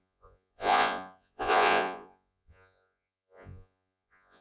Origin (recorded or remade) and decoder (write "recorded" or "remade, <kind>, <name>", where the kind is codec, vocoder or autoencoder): remade, vocoder, Vocos